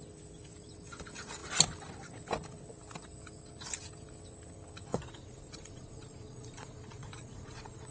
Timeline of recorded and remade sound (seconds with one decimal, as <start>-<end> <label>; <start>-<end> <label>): 0.0-4.9 recorded; 4.9-7.9 remade